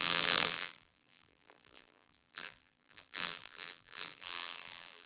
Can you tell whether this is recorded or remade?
remade